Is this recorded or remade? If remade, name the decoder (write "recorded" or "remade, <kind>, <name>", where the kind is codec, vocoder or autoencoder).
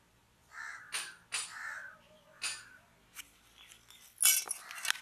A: recorded